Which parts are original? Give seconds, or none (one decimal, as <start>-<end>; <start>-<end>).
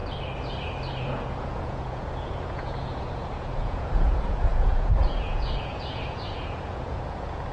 0.0-0.9